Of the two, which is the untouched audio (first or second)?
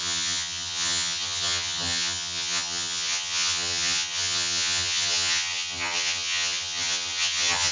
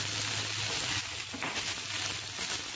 second